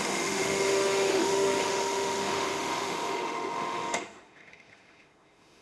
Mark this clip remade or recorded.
remade